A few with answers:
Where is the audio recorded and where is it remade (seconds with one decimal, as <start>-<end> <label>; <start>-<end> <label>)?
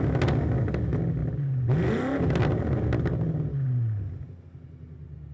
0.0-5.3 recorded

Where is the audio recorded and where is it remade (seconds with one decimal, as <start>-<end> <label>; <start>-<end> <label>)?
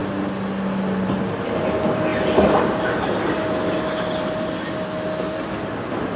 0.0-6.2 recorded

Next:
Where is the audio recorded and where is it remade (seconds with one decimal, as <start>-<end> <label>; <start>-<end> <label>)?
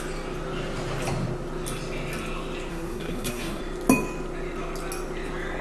0.0-2.7 recorded; 2.7-3.6 remade; 3.6-5.6 recorded